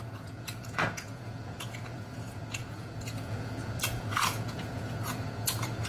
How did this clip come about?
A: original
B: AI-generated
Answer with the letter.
B